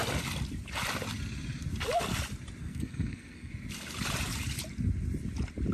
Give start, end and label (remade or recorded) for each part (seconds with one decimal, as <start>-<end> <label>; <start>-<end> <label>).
0.0-2.6 recorded; 2.6-3.5 remade; 3.5-5.7 recorded